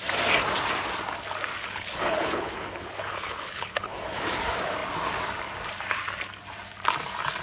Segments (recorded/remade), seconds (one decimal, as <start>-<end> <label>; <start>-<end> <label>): 0.0-1.6 recorded; 1.6-4.2 remade; 4.2-7.4 recorded